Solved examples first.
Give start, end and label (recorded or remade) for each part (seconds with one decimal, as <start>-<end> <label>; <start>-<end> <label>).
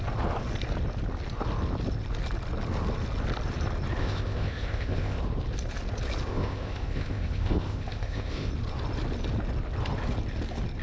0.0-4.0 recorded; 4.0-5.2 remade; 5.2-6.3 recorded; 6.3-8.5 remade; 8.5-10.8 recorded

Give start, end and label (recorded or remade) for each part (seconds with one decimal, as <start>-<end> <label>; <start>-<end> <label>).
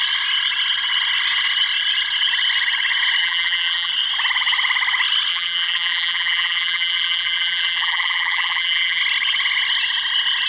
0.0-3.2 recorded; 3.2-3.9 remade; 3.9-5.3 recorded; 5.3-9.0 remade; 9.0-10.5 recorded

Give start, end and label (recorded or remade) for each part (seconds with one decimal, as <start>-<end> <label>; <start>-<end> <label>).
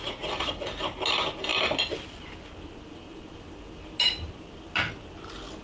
0.0-0.5 remade; 0.5-5.6 recorded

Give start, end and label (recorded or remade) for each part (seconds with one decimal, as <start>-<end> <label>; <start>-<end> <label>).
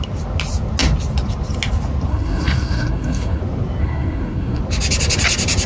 0.0-2.1 recorded; 2.1-3.4 remade; 3.4-3.8 recorded; 3.8-4.6 remade; 4.6-5.7 recorded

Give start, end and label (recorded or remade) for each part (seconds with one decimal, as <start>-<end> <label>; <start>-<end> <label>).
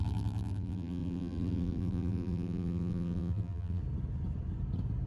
0.0-3.8 remade; 3.8-5.1 recorded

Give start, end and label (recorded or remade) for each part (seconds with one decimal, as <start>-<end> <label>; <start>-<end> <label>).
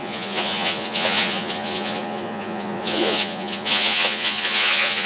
0.0-5.1 remade